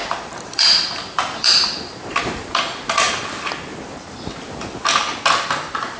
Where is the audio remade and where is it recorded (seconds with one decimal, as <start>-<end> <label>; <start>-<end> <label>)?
0.0-2.6 remade; 2.6-3.7 recorded; 3.7-4.8 remade; 4.8-6.0 recorded